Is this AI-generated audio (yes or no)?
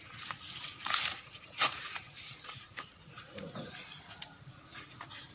yes